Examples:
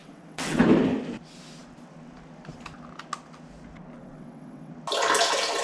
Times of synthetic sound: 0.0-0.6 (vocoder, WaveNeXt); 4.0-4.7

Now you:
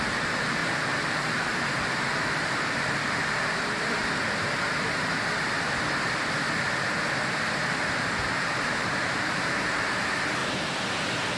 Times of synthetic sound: 0.0-4.0 (vocoder, BigVGAN v2); 7.7-10.4; 11.0-11.4

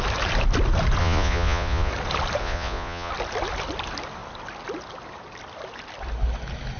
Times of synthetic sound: 1.0-1.9 (vocoder, Vocos); 2.4-3.1